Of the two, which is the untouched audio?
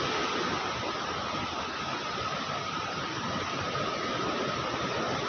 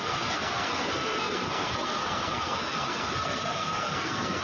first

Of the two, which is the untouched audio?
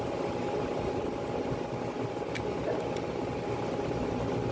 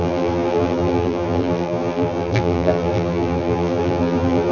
first